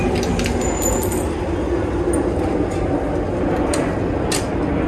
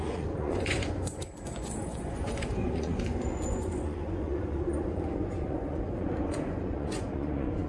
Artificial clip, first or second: second